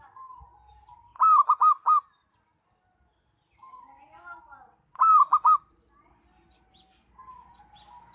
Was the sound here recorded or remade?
recorded